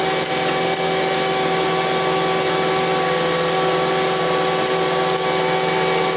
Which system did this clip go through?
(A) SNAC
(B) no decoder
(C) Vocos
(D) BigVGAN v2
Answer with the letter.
B